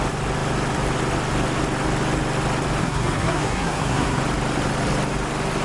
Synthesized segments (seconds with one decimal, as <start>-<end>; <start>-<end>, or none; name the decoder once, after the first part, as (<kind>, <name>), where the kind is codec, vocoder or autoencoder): 2.8-4.2 (codec, SNAC)